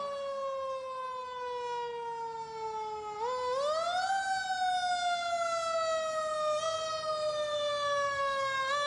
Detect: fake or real real